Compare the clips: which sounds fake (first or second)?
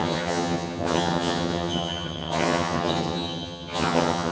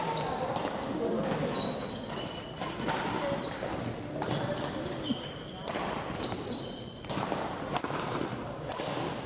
first